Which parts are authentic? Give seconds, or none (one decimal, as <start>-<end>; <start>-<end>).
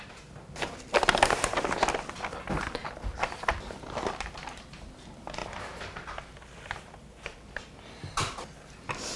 0.0-9.2